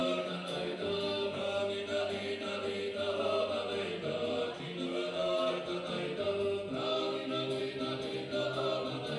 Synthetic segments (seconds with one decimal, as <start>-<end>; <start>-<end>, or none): 0.0-1.4; 4.9-5.5; 6.9-7.6

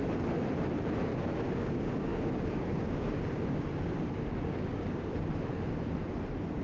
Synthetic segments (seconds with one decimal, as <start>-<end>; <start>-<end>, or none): 1.1-5.1

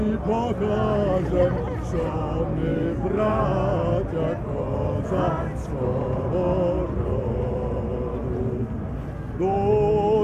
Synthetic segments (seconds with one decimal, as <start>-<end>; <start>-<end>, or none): 2.7-3.4

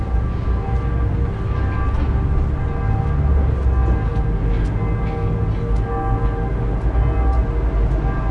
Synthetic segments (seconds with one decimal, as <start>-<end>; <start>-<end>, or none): none

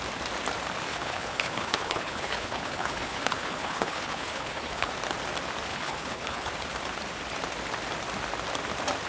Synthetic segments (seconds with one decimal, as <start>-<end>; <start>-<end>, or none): 0.9-4.9; 5.7-6.5

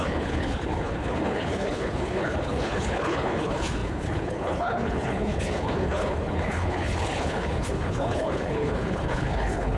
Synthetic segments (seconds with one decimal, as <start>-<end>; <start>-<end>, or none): 0.0-9.8